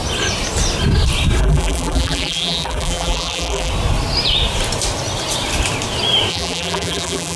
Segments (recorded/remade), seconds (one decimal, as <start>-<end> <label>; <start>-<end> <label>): 0.0-1.4 recorded; 1.4-3.7 remade; 3.7-6.3 recorded; 6.3-7.4 remade